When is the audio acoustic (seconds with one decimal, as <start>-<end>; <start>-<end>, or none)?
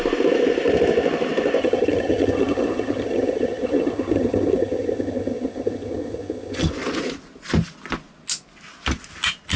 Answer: 0.0-1.6; 6.7-9.6